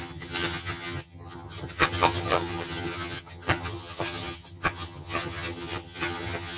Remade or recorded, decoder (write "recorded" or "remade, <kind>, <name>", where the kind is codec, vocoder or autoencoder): remade, vocoder, HiFi-GAN